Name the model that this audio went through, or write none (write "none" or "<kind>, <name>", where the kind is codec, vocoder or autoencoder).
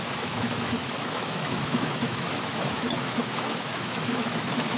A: autoencoder, DAC-VAE